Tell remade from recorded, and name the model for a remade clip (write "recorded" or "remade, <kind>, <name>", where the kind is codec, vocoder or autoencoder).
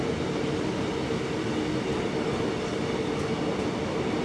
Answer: recorded